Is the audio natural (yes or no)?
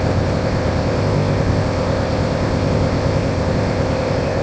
no